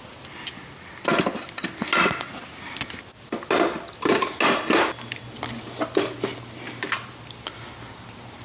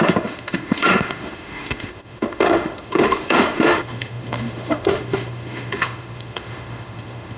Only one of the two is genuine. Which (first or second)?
first